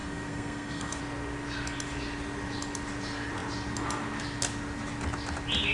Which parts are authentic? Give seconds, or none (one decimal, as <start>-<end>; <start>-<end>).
1.0-5.7